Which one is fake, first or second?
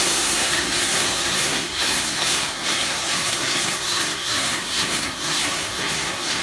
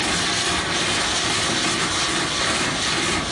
first